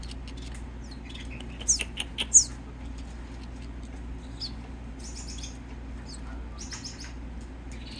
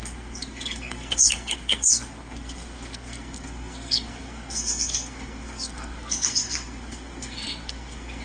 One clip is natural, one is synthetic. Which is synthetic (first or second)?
second